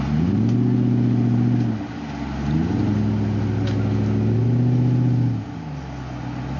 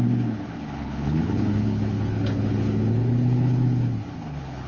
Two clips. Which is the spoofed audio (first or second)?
second